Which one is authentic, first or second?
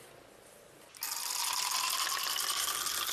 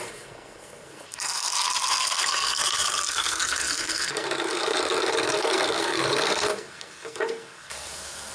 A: first